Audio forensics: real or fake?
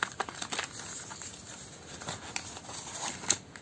real